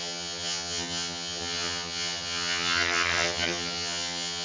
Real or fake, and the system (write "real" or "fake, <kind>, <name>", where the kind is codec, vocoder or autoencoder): fake, vocoder, HiFi-GAN